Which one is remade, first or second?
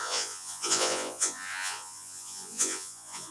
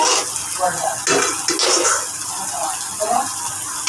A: first